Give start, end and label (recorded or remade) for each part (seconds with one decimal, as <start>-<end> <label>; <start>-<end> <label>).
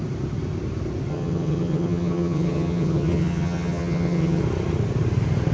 0.0-1.1 recorded; 1.1-4.4 remade; 4.4-5.5 recorded